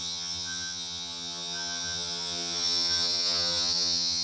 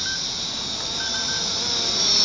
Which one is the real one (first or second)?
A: second